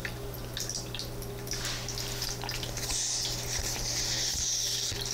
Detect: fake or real real